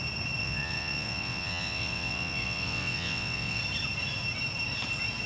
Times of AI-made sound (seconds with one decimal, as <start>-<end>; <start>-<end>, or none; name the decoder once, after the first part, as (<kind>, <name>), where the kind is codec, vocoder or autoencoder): 0.4-3.6 (vocoder, WaveNeXt)